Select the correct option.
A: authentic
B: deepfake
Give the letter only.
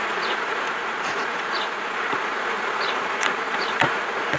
B